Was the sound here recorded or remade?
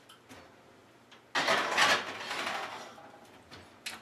recorded